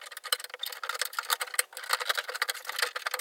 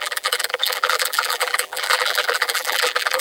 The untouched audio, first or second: first